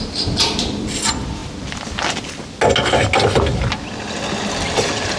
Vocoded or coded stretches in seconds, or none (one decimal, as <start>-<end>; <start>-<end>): none